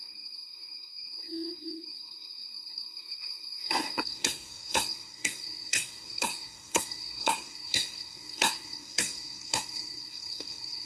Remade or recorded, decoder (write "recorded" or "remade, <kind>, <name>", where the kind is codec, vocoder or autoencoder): remade, codec, SNAC